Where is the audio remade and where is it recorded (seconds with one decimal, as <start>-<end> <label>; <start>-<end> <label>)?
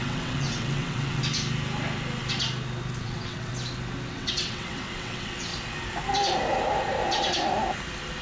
0.0-1.2 remade; 1.2-3.0 recorded; 3.0-3.5 remade; 3.5-4.1 recorded; 4.1-5.5 remade; 5.5-8.2 recorded